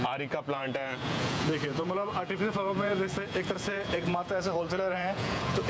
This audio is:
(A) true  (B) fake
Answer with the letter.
B